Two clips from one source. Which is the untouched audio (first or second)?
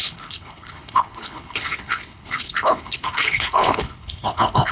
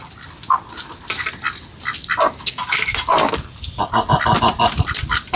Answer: second